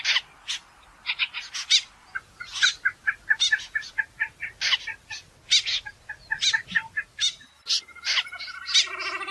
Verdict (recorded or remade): recorded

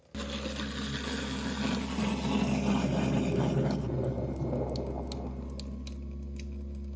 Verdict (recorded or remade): recorded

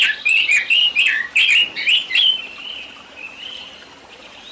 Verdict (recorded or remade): recorded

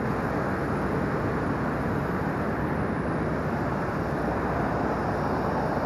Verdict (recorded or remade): recorded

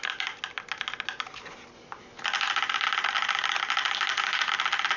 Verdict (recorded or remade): recorded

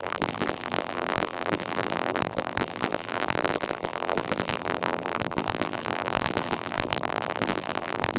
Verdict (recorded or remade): remade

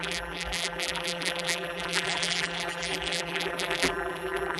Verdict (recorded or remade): remade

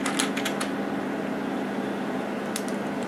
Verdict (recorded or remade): recorded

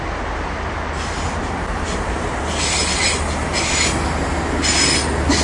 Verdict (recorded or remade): recorded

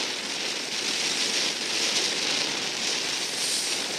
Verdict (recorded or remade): recorded